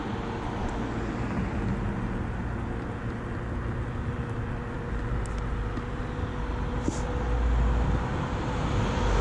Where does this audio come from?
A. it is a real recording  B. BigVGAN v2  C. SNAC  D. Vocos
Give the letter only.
A